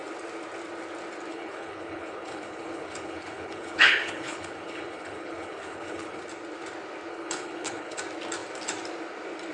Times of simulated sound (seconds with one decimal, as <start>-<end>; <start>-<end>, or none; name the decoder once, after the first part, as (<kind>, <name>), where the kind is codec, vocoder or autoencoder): 1.3-6.2 (codec, HILCodec); 7.1-8.0